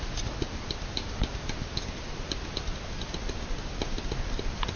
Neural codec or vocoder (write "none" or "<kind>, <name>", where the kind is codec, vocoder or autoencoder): none